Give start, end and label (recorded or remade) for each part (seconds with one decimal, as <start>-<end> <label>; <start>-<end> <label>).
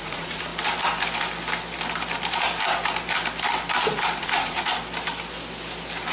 0.0-0.5 remade; 0.5-4.2 recorded; 4.2-4.7 remade; 4.7-6.1 recorded